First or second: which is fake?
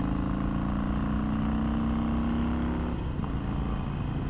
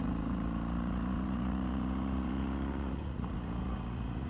second